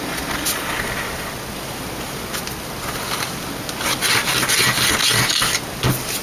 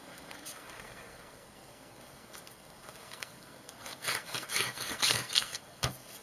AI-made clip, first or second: second